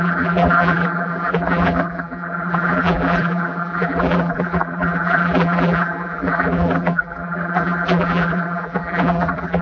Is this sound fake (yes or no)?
yes